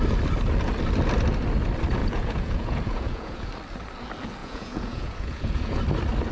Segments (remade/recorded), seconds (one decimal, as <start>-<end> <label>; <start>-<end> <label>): 0.0-2.0 recorded; 2.0-3.5 remade; 3.5-4.4 recorded; 4.4-5.8 remade; 5.8-6.3 recorded